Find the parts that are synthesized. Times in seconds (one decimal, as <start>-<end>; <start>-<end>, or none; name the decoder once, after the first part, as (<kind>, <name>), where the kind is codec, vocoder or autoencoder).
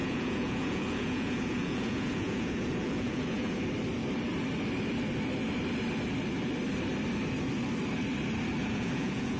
0.0-3.6 (vocoder, Vocos); 8.6-9.4